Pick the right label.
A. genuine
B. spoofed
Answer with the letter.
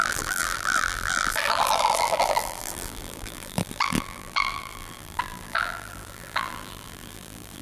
B